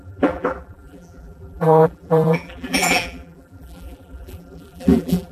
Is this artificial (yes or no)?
yes